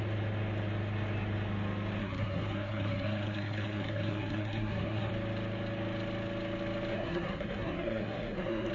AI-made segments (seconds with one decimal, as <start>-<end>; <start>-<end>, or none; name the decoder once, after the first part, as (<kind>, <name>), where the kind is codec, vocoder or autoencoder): 2.0-5.1 (codec, SNAC); 6.9-8.7